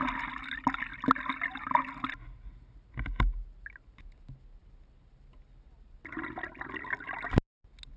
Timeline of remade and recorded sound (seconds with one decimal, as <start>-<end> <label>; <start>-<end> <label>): 0.0-8.0 recorded